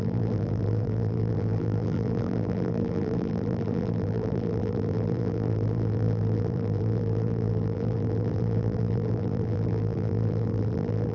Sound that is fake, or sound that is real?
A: fake